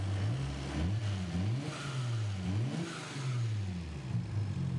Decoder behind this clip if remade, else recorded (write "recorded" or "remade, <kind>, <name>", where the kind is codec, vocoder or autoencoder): recorded